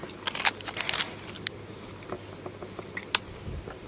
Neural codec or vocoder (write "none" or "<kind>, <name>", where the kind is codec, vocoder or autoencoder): none